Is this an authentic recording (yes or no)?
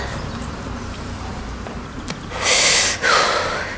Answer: yes